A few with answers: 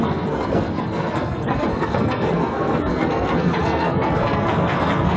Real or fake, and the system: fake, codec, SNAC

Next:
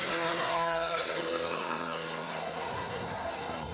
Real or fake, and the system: fake, codec, SNAC